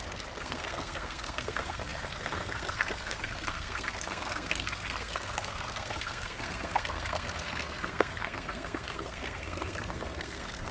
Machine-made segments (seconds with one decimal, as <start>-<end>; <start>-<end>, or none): 0.0-10.7